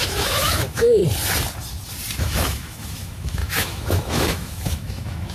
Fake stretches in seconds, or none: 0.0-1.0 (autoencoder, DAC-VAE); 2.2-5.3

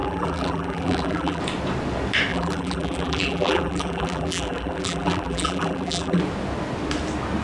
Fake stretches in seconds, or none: 0.0-1.4 (vocoder, BigVGAN v2); 2.3-6.2